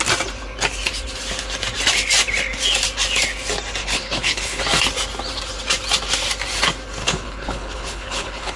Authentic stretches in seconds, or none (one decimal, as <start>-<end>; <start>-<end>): 0.0-3.8; 4.6-7.0